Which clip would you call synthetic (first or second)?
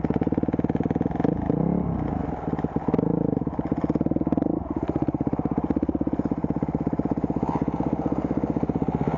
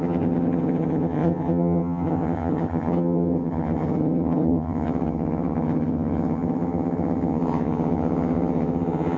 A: second